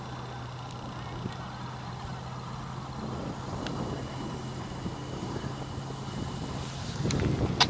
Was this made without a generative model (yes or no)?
yes